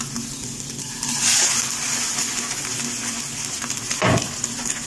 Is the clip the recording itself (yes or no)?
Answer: yes